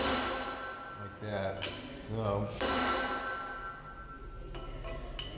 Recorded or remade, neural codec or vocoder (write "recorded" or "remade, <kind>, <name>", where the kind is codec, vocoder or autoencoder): recorded